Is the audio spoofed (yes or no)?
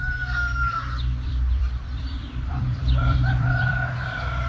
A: yes